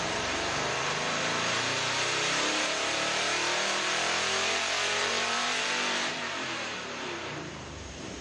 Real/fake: fake